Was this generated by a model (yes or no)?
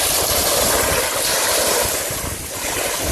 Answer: no